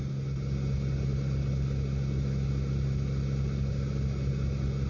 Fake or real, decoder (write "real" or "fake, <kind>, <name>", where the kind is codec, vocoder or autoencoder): real